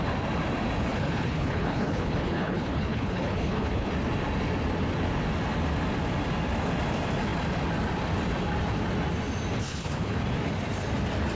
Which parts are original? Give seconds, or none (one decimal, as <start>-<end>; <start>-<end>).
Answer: 0.0-0.9; 3.9-9.6; 10.2-11.3